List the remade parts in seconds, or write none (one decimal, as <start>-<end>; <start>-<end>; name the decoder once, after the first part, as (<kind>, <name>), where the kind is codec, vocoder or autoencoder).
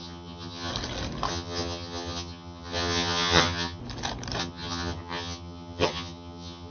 0.0-0.7 (vocoder, HiFi-GAN); 1.3-3.8; 4.4-6.7